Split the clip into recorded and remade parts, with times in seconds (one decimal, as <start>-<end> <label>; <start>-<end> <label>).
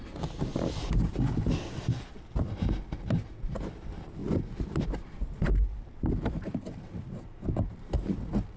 0.0-0.5 recorded; 0.5-1.1 remade; 1.1-4.2 recorded; 4.2-7.9 remade; 7.9-8.6 recorded